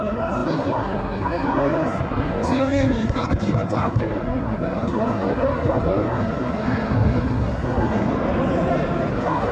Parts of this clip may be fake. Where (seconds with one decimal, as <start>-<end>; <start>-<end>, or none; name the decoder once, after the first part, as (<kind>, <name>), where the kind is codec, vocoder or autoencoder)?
0.0-8.1 (codec, SNAC); 9.1-9.5